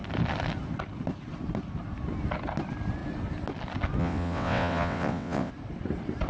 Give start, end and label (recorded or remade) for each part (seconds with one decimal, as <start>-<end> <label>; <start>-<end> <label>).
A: 0.0-4.0 recorded; 4.0-5.5 remade; 5.5-6.3 recorded